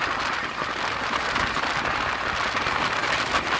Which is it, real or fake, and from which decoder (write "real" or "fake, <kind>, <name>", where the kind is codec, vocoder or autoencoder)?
real